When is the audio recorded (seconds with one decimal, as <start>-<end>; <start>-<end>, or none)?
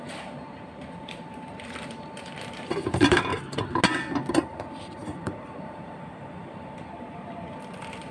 3.3-4.3